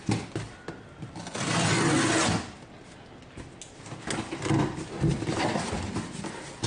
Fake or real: real